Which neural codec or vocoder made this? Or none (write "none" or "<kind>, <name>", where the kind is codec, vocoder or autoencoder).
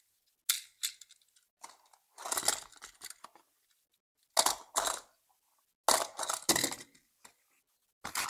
none